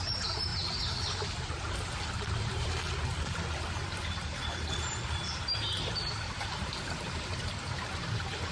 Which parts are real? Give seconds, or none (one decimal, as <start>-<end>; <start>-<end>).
0.5-1.6; 2.8-6.4